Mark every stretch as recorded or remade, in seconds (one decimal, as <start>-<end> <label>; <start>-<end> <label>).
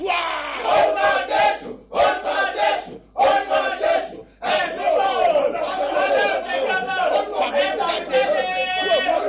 0.0-9.3 recorded